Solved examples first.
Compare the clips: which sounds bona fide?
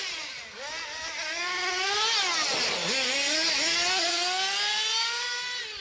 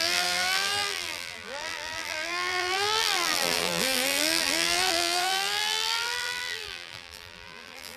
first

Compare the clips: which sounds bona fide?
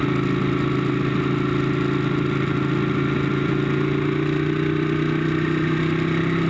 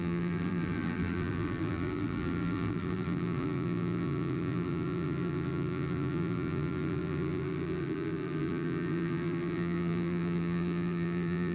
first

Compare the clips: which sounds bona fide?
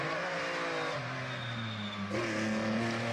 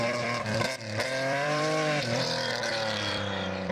first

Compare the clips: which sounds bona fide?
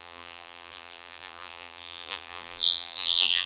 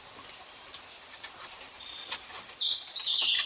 second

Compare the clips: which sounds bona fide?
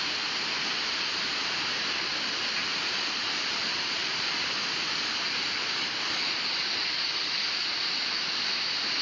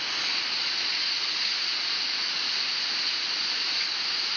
second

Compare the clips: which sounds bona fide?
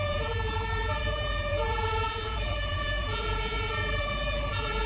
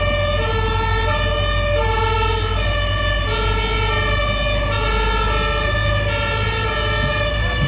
second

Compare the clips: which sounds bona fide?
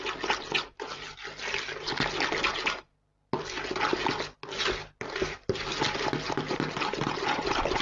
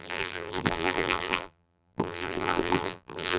first